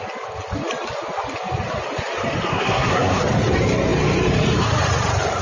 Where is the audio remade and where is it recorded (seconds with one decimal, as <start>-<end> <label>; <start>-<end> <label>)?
0.0-2.5 recorded; 2.5-3.2 remade; 3.2-5.4 recorded